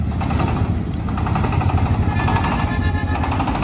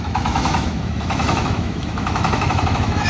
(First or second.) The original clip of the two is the first